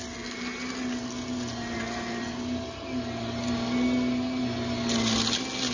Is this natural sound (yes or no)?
yes